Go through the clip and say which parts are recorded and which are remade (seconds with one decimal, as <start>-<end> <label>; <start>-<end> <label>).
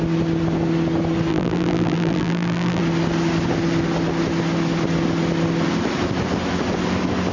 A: 0.0-1.3 recorded; 1.3-2.8 remade; 2.8-7.3 recorded